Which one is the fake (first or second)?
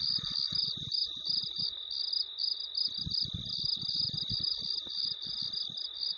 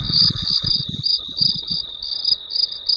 second